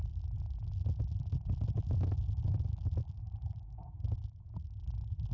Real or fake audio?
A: real